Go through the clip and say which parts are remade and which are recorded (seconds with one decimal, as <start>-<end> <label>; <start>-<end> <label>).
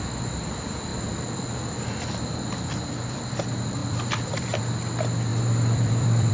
0.0-0.9 recorded; 0.9-3.4 remade; 3.4-3.8 recorded; 3.8-4.6 remade; 4.6-5.3 recorded; 5.3-6.3 remade